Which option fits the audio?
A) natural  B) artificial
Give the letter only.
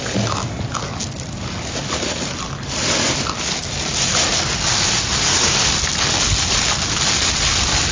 A